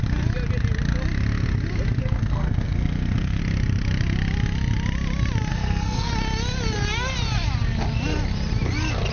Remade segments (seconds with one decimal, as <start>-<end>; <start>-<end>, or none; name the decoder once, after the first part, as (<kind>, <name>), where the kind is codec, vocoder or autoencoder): 2.0-3.4 (codec, SNAC); 5.5-6.1